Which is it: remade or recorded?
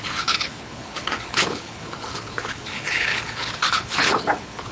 remade